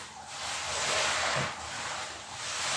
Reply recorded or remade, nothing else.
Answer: recorded